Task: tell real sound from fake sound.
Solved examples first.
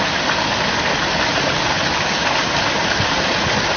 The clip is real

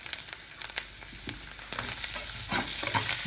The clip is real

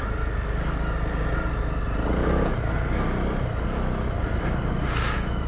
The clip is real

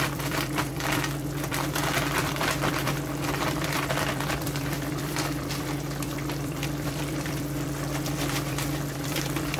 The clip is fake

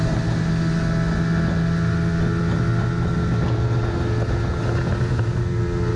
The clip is real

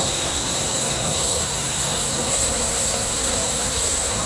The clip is fake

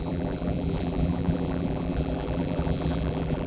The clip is fake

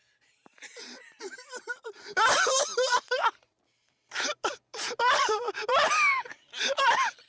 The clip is fake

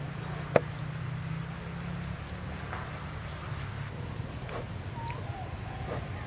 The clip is real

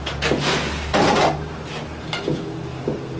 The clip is real